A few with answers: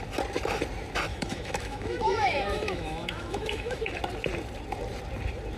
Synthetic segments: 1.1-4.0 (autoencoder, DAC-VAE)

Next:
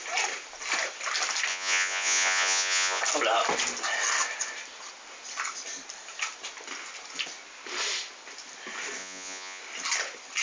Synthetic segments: 1.5-3.0 (vocoder, Vocos); 9.0-9.6

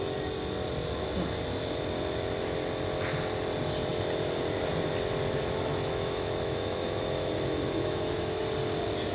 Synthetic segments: 5.7-8.4 (autoencoder, DAC-VAE)

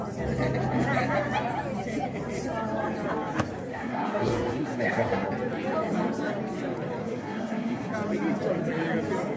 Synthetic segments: 3.7-5.3 (codec, SNAC); 7.0-7.9

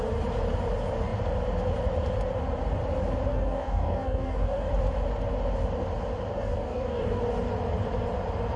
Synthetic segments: 3.3-4.7 (codec, DAC); 6.3-7.2

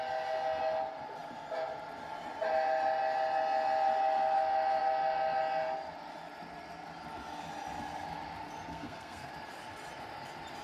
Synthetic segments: 8.7-9.3 (codec, SNAC)

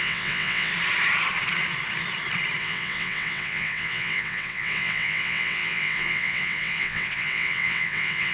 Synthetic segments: 0.0-0.7 (vocoder, WaveNeXt); 2.6-8.3